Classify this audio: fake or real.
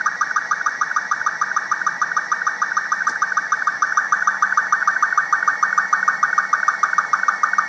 real